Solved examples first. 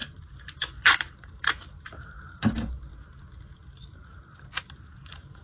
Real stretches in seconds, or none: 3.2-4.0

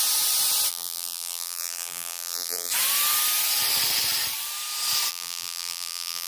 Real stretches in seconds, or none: 0.0-0.7; 2.7-5.1